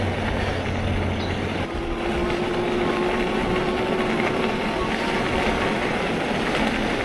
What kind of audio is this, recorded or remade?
recorded